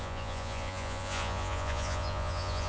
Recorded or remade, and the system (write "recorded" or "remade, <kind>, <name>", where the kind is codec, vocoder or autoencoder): remade, vocoder, Vocos